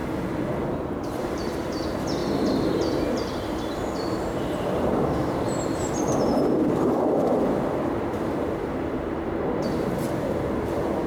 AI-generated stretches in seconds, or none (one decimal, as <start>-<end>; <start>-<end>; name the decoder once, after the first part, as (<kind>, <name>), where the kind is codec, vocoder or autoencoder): 0.7-2.2 (vocoder, BigVGAN v2); 3.1-11.1